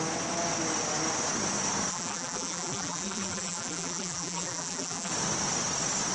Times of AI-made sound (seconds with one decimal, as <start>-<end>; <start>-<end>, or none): 1.9-5.1